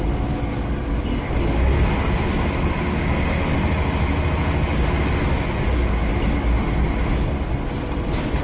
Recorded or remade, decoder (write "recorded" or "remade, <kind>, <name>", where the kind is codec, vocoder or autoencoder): recorded